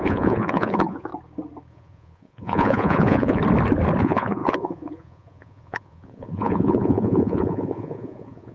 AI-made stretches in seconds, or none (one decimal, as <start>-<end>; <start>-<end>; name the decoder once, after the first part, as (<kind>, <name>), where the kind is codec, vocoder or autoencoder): 0.0-1.1 (vocoder, Vocos); 1.7-3.4; 4.0-8.5